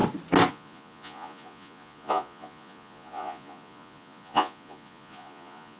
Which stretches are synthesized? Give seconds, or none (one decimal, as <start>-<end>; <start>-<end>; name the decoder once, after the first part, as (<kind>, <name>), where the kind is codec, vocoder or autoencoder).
0.5-5.8 (vocoder, Vocos)